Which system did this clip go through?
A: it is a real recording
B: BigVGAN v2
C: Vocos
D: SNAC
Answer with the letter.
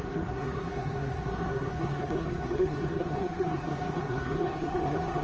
D